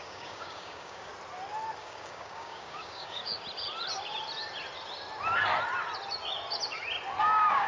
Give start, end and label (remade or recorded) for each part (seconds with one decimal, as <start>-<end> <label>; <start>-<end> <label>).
0.0-1.1 remade; 1.1-1.8 recorded; 1.8-3.2 remade; 3.2-7.2 recorded; 7.2-7.7 remade